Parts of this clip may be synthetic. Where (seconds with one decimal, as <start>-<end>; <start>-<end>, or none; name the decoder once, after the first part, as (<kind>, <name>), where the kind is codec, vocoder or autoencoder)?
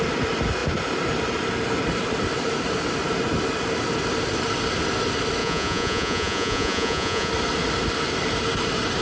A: 5.4-7.3 (vocoder, Vocos)